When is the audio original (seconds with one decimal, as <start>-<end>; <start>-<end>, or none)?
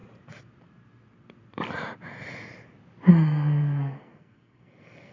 0.0-3.1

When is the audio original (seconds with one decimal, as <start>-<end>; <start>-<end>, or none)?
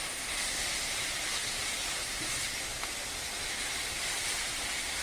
2.7-3.3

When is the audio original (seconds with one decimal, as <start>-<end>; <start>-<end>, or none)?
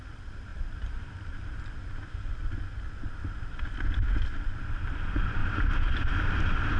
0.0-0.5; 1.7-5.4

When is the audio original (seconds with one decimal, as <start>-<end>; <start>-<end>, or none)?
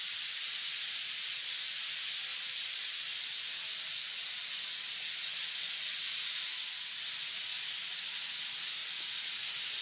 0.0-2.3; 2.9-9.8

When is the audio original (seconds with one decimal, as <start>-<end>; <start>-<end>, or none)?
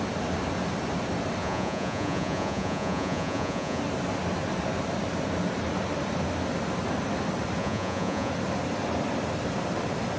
0.0-1.4; 3.8-7.6; 8.3-10.2